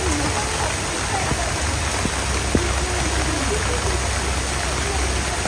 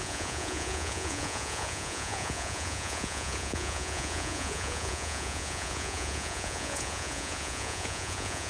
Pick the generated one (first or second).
second